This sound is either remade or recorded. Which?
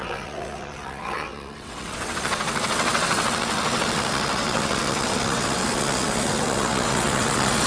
remade